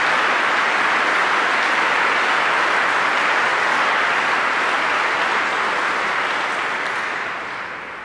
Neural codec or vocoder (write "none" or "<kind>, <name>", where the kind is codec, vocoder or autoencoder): none